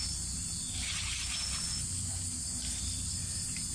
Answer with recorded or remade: recorded